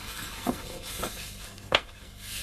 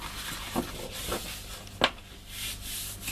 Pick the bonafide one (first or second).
second